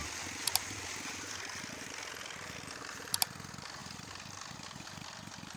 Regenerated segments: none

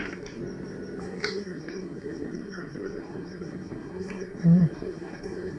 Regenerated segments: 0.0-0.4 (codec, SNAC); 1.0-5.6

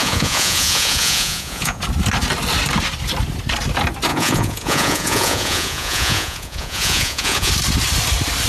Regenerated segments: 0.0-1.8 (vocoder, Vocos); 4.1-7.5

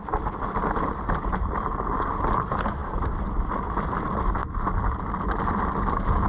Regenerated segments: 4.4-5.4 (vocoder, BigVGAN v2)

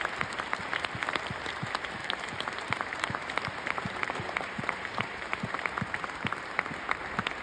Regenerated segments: 2.0-5.7 (vocoder, BigVGAN v2)

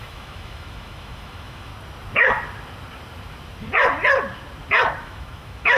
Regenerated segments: 0.0-1.7 (autoencoder, DAC-VAE); 5.0-5.8

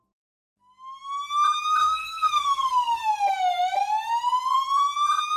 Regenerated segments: 1.8-3.1 (codec, SNAC)